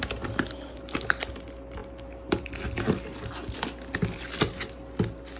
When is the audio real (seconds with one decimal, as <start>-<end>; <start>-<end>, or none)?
0.0-5.4

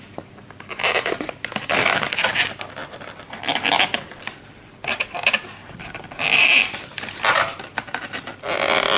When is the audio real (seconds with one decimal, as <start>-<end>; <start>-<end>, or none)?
2.8-4.1

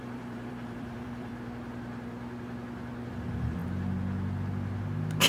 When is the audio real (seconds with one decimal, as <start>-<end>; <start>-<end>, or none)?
1.3-3.1; 3.6-5.3

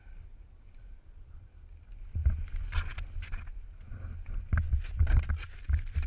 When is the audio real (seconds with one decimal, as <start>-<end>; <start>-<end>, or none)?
2.2-5.2